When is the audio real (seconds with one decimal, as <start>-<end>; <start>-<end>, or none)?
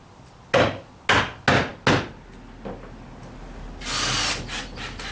0.0-5.1